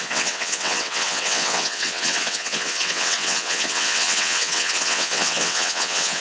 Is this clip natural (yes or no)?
no